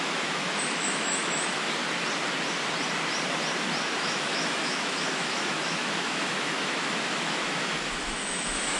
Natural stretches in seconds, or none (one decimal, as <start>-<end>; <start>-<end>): 1.8-4.0